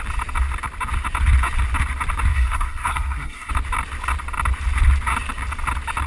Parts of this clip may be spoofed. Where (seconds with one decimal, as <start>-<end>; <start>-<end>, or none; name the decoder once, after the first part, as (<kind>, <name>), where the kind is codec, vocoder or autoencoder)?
2.3-3.5 (codec, SNAC)